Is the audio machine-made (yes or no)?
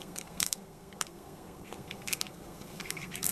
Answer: yes